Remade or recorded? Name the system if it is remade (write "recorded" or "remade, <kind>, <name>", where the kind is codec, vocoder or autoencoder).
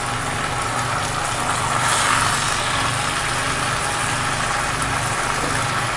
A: recorded